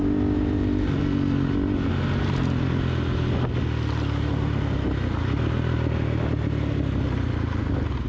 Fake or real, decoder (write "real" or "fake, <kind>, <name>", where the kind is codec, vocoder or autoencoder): real